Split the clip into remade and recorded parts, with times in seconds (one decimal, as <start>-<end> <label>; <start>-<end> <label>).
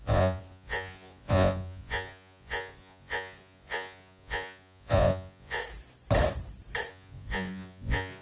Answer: 0.0-5.6 remade; 5.6-6.9 recorded; 6.9-8.2 remade